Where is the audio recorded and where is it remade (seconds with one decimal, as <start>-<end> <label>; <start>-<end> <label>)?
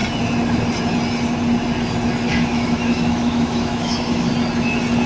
0.0-2.3 recorded; 2.3-4.3 remade; 4.3-5.1 recorded